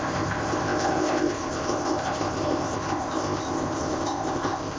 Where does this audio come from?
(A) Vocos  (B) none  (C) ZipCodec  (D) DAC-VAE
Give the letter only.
C